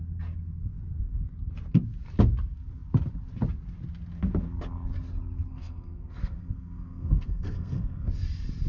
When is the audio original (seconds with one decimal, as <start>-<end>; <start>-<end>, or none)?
0.0-5.5; 8.1-8.7